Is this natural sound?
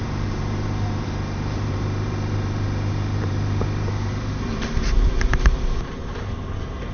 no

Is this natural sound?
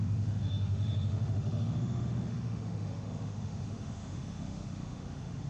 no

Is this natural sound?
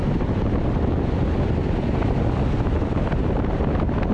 yes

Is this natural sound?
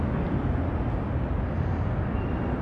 yes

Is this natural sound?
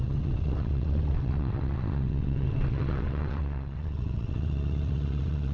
no